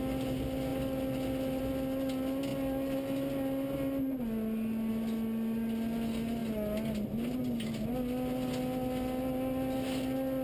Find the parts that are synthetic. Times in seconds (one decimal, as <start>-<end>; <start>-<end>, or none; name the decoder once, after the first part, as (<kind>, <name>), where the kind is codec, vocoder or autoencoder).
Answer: none